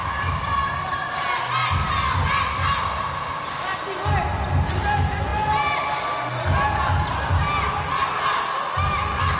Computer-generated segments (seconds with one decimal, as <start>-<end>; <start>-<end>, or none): none

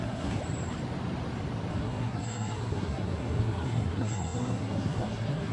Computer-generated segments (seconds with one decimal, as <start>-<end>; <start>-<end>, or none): 0.0-0.4; 1.7-5.5

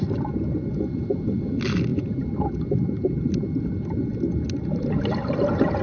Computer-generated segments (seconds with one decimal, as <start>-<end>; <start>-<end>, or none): none

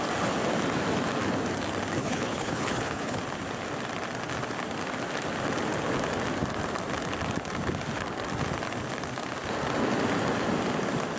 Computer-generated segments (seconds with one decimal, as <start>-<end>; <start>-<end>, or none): 2.0-3.2